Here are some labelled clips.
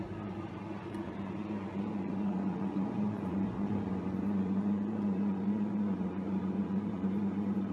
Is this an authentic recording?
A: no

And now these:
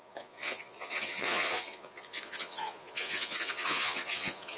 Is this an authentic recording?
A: no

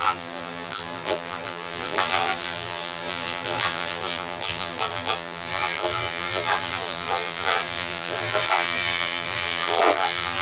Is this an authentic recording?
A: no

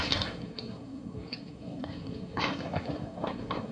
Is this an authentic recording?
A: no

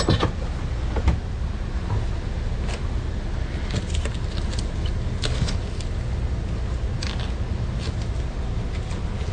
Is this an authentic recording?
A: yes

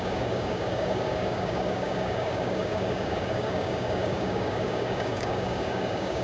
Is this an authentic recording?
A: no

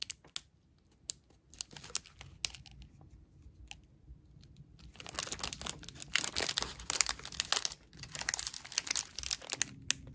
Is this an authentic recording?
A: yes